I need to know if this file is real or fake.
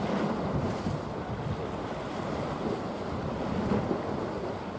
real